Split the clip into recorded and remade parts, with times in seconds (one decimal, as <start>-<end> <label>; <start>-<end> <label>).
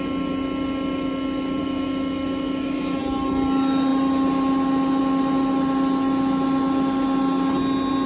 0.0-1.6 recorded; 1.6-3.0 remade; 3.0-8.1 recorded